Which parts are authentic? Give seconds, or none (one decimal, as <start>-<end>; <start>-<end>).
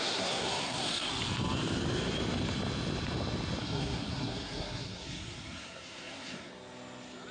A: 1.1-3.6; 6.5-7.3